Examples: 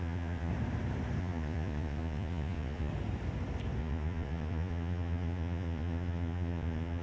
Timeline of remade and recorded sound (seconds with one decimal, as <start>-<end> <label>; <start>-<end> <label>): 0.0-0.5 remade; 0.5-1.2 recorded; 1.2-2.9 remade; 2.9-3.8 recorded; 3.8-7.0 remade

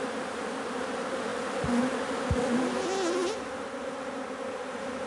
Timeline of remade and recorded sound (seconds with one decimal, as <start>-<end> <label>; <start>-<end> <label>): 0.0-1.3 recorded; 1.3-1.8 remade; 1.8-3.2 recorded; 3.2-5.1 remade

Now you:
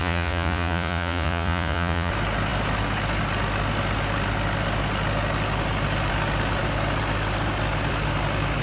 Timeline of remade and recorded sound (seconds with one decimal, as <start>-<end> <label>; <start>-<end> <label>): 0.0-2.1 remade; 2.1-8.6 recorded

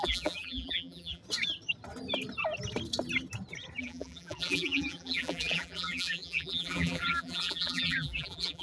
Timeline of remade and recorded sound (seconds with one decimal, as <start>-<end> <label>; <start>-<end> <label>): 0.0-1.2 remade; 1.2-3.8 recorded; 3.8-8.6 remade

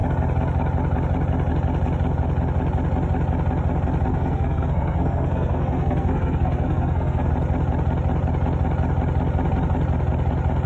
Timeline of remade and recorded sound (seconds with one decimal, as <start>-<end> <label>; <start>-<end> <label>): 0.0-4.1 recorded; 4.1-7.3 remade; 7.3-10.7 recorded